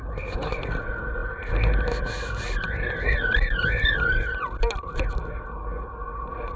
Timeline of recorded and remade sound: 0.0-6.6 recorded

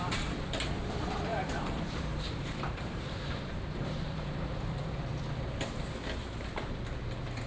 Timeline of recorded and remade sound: 0.0-1.3 recorded; 1.3-5.2 remade; 5.2-7.5 recorded